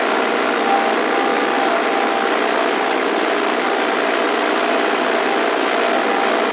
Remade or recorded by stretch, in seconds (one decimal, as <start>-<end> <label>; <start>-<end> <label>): 0.0-1.3 recorded; 1.3-5.2 remade; 5.2-6.5 recorded